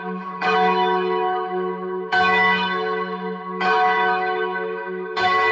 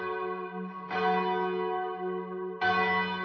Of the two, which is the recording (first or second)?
second